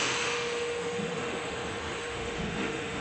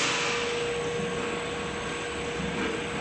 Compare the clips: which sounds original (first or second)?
second